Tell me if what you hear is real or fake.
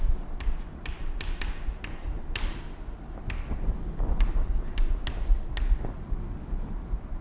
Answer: real